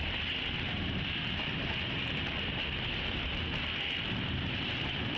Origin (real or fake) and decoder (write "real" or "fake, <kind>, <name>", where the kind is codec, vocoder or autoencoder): real